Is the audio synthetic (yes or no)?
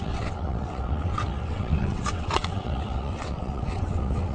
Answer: yes